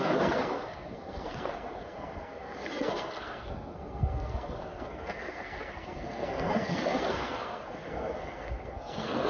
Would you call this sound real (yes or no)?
no